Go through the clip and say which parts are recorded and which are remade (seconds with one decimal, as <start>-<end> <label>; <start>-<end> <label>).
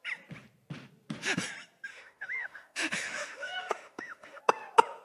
0.0-1.9 recorded; 1.9-4.4 remade; 4.4-5.0 recorded